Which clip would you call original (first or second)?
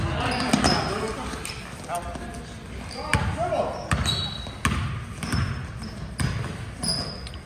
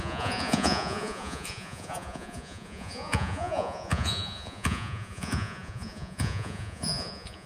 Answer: first